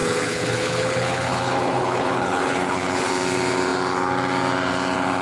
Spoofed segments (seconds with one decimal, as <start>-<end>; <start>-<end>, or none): 0.0-3.1